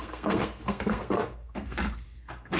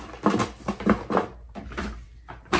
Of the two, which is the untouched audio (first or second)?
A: second